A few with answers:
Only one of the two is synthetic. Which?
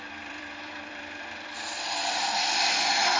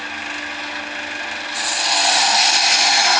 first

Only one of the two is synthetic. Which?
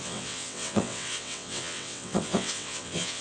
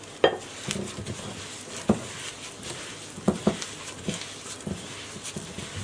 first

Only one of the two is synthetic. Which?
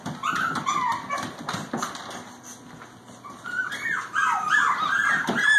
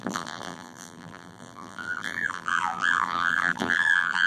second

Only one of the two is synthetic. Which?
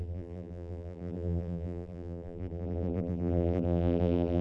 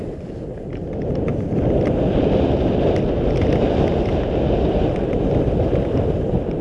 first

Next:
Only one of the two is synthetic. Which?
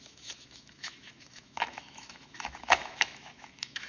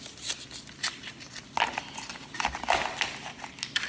first